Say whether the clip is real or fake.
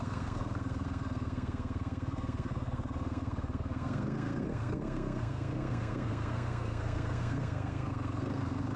fake